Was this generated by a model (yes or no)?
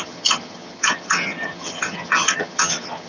yes